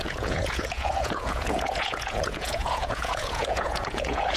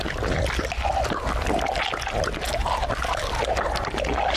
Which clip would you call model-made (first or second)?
first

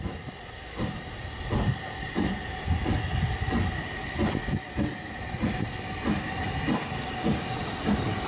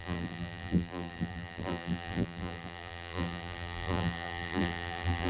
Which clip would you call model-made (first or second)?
second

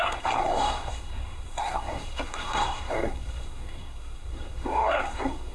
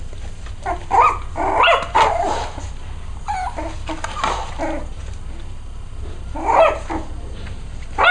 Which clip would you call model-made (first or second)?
first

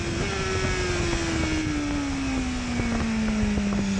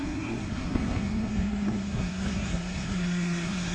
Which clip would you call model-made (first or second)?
second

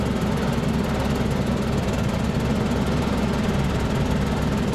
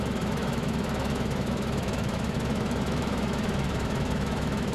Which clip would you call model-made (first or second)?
second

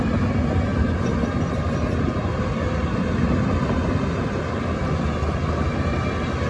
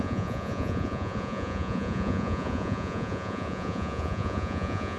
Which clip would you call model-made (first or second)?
second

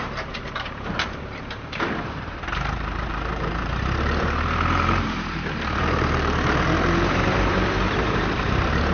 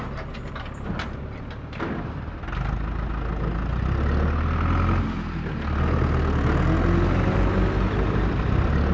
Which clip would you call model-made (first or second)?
first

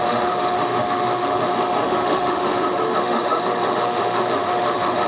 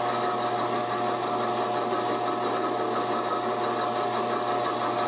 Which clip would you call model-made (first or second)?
first